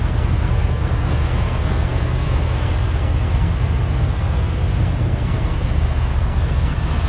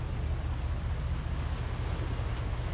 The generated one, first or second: first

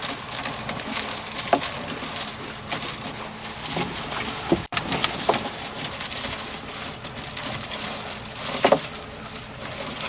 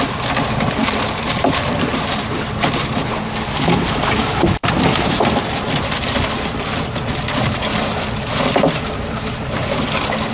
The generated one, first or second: second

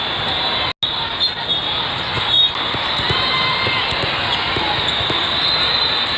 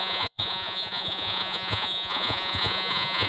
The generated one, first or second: second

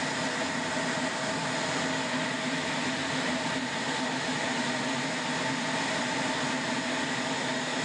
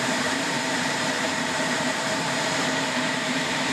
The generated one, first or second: second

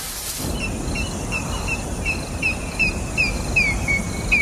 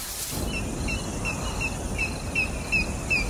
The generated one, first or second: first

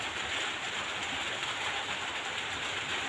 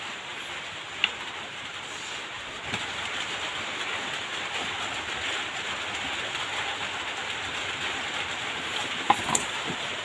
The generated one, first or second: first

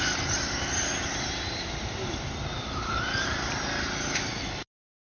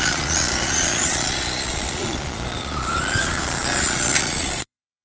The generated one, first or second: second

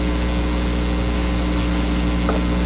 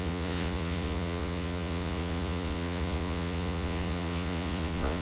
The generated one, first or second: second